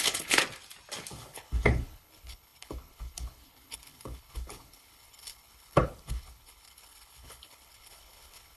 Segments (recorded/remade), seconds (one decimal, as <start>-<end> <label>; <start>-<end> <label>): 0.0-0.4 remade; 0.4-1.1 recorded; 1.1-8.6 remade